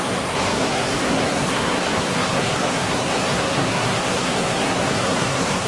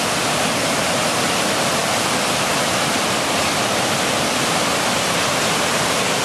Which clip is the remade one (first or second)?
first